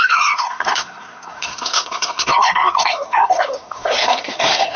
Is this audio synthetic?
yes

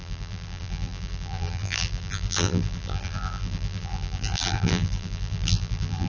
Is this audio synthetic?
yes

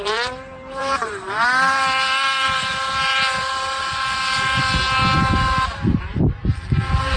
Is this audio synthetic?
yes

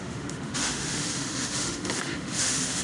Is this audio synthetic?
yes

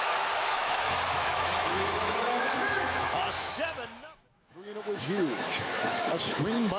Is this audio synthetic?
yes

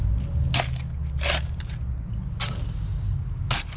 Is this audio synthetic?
no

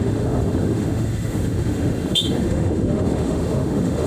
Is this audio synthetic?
yes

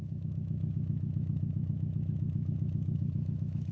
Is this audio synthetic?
yes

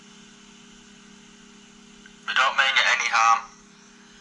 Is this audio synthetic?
no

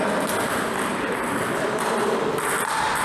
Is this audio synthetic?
no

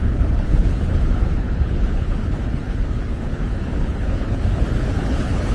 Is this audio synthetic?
yes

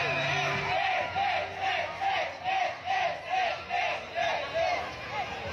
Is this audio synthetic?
no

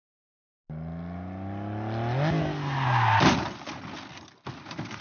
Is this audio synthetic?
no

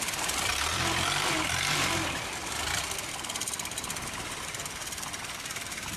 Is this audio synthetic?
yes